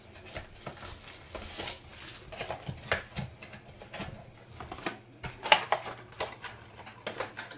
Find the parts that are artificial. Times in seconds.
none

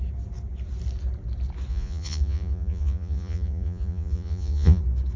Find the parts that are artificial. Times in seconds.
1.7-4.8 (vocoder, Vocos)

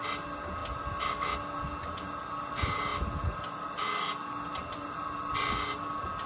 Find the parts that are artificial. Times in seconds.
none

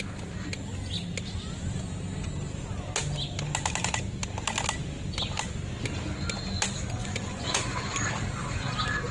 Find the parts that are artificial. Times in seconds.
7.0-7.8 (vocoder, Vocos)

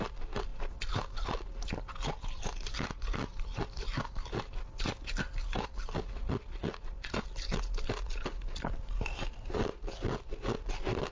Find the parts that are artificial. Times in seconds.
none

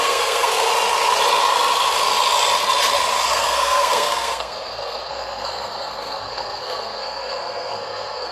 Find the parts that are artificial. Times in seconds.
0.0-0.7 (codec, SNAC); 3.3-8.3

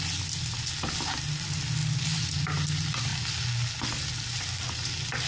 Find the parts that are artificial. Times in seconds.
none

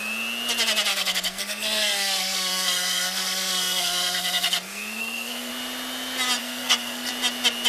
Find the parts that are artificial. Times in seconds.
0.9-5.5 (codec, SNAC); 6.4-7.1